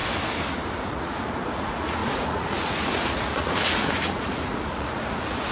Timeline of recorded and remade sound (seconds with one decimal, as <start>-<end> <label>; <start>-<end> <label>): 0.0-0.9 recorded; 0.9-5.5 remade